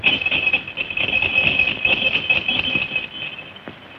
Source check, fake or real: real